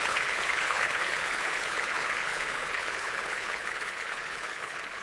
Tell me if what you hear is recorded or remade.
remade